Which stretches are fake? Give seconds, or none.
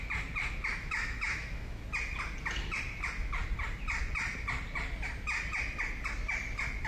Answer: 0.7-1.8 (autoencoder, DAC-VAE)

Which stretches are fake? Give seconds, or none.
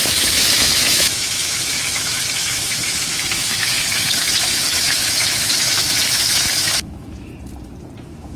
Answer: 0.0-7.3 (autoencoder, DAC-VAE); 8.0-8.4